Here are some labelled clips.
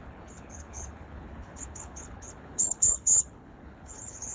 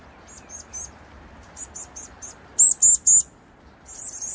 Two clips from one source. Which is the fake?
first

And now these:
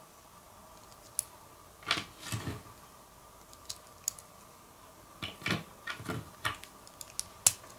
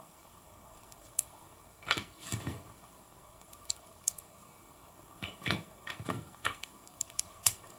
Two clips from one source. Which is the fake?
second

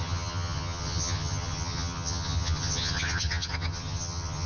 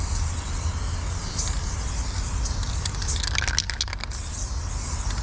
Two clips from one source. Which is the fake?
first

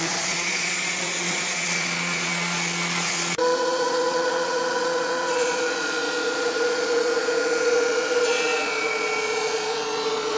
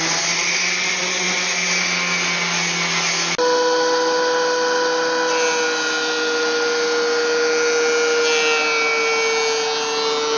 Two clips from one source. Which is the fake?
first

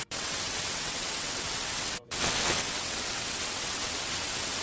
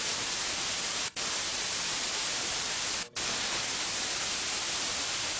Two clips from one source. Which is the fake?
first